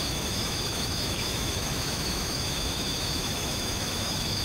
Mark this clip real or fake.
fake